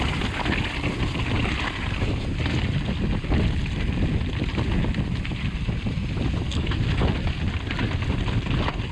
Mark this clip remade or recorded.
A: recorded